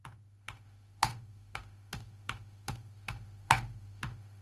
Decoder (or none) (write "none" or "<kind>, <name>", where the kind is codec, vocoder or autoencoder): autoencoder, DAC-VAE